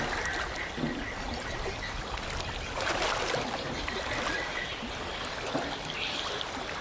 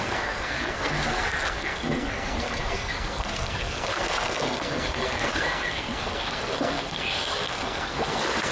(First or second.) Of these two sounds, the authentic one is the first